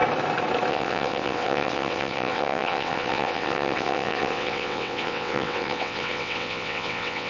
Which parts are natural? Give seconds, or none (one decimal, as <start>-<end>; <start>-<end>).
0.0-0.7